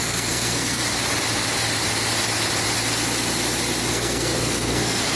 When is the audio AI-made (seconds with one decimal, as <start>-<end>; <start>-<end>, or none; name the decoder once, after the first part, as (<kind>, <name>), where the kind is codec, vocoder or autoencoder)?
0.0-0.8 (codec, SNAC); 3.9-5.2